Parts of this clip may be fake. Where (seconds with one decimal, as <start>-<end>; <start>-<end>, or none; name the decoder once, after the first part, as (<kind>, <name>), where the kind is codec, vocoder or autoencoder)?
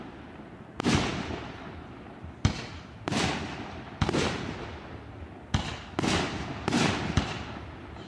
1.1-1.7 (vocoder, BigVGAN v2); 2.7-3.9